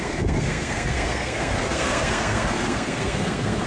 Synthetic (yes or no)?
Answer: yes